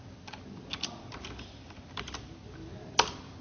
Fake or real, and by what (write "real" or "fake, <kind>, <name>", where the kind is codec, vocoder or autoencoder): real